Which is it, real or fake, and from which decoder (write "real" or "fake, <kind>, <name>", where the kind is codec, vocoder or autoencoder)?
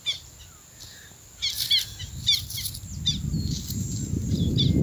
real